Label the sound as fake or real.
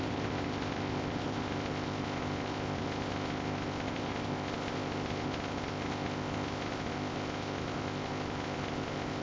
fake